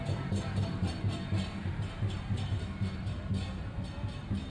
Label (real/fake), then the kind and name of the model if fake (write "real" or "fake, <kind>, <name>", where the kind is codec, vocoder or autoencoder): fake, vocoder, BigVGAN v2